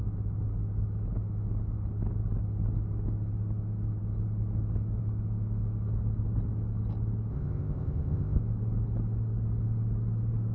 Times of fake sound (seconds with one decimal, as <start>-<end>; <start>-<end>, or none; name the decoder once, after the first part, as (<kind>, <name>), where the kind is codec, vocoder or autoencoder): 7.3-8.4 (codec, ZipCodec)